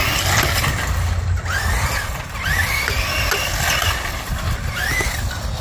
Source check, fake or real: real